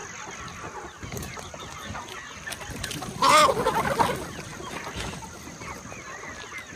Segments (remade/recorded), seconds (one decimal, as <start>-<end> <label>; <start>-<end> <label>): 0.0-6.8 recorded